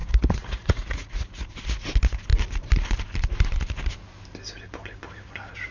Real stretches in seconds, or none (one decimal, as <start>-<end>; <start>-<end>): 1.9-5.7